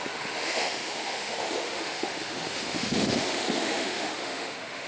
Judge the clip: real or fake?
fake